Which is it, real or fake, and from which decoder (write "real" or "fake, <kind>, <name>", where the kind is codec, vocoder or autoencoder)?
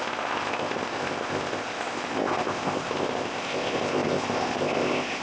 fake, codec, ZipCodec